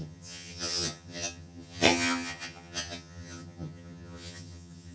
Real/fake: fake